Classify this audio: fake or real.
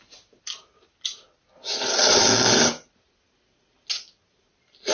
real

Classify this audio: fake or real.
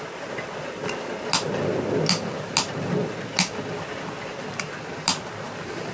real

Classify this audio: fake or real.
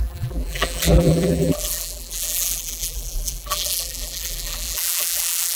fake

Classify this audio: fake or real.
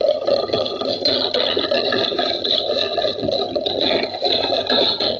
fake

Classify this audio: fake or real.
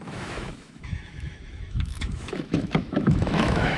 fake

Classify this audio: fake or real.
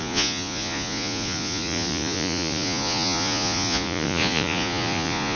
fake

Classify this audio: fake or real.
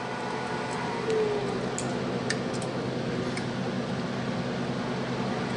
real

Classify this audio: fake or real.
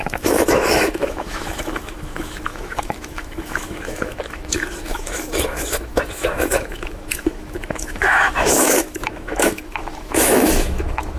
fake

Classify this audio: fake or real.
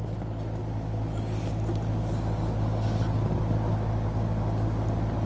real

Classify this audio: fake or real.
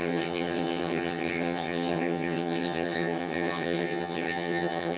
fake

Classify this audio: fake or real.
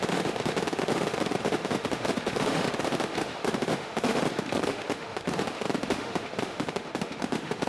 fake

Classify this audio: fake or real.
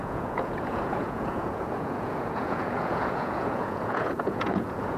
fake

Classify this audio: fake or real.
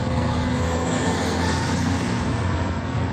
fake